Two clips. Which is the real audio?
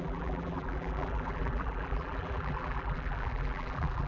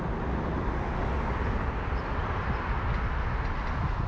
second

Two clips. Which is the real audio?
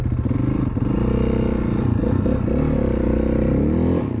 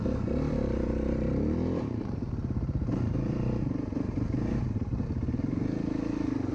first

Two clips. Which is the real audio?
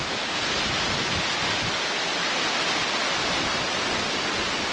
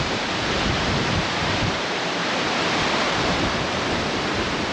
first